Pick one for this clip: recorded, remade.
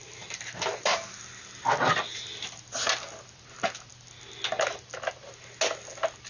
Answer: recorded